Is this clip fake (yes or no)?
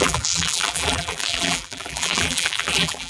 yes